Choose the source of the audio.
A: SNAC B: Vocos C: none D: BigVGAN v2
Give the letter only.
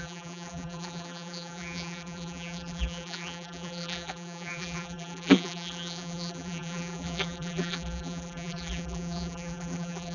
D